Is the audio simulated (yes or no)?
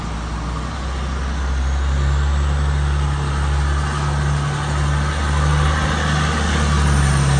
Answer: no